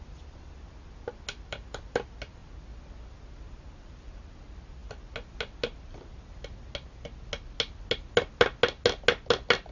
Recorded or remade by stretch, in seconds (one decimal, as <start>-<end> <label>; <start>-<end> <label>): 0.0-9.7 recorded